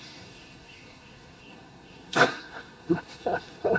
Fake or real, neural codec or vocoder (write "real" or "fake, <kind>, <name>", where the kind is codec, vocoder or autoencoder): fake, codec, SNAC